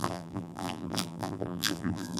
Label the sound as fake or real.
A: fake